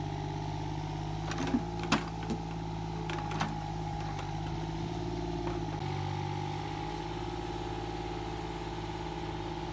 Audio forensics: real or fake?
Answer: real